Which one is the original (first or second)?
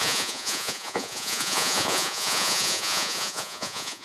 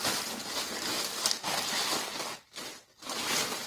second